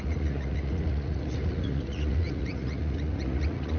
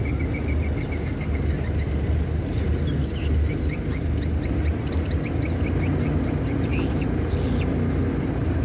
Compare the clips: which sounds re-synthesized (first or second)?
first